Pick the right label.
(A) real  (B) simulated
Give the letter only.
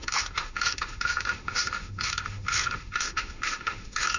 B